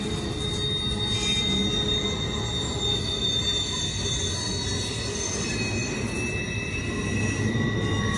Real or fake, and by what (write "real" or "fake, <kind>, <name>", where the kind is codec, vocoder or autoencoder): real